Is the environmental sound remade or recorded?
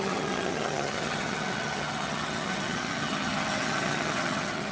remade